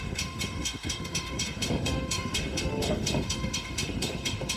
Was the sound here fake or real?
fake